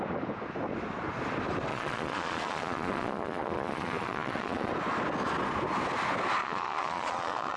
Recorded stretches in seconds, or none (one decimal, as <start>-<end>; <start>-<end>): 0.0-1.7; 4.7-6.4